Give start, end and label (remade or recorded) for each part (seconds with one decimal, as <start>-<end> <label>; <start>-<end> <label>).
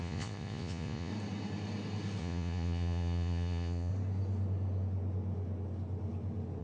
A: 0.0-1.1 remade; 1.1-2.2 recorded; 2.2-3.9 remade; 3.9-6.6 recorded